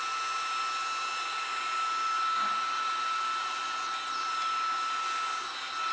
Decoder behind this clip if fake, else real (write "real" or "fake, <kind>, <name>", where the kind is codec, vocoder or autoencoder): real